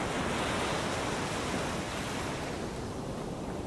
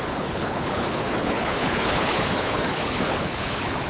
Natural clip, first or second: first